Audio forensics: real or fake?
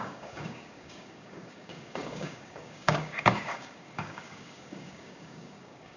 fake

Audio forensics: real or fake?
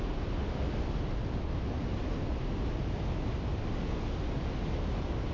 real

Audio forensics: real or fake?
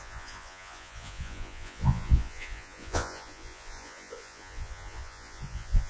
fake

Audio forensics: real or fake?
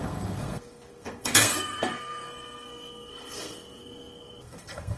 fake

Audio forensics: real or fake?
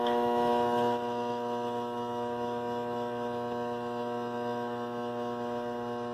fake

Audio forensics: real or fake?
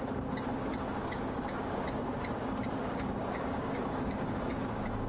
fake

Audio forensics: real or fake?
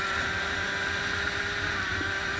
real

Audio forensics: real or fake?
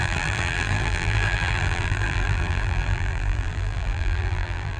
fake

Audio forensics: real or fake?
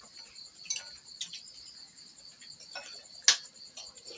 real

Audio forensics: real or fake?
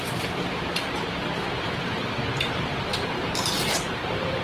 fake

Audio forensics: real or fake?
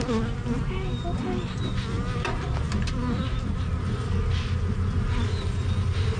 real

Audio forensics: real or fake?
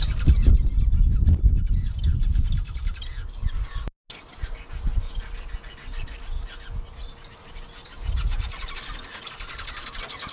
real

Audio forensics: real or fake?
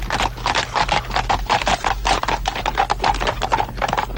real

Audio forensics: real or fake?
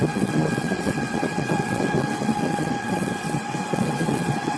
fake